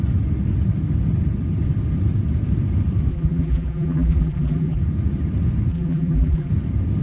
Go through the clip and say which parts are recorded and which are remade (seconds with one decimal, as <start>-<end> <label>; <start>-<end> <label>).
0.0-3.1 recorded; 3.1-4.8 remade; 4.8-5.7 recorded; 5.7-6.5 remade; 6.5-7.0 recorded